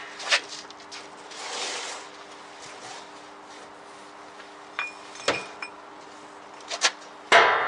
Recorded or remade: recorded